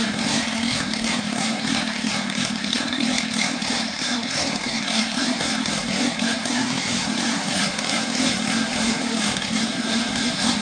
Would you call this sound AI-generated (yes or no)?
yes